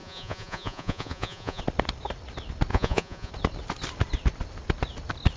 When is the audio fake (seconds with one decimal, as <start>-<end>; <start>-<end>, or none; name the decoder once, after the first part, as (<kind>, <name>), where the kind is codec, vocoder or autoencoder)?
0.0-1.6 (vocoder, Vocos); 2.7-3.3